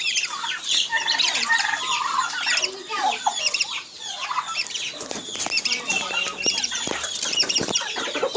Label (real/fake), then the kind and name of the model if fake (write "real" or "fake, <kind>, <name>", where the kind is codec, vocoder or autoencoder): fake, vocoder, BigVGAN v2